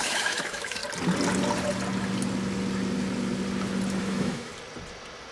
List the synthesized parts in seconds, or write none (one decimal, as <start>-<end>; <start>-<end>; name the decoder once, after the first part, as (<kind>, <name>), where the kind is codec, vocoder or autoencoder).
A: 0.0-0.8 (autoencoder, DAC-VAE); 4.0-4.5